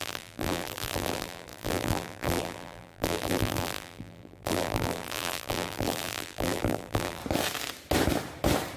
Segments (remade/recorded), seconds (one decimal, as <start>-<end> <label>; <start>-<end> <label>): 0.0-7.2 remade; 7.2-8.8 recorded